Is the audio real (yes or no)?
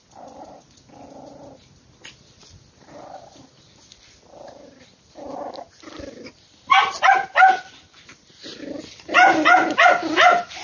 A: yes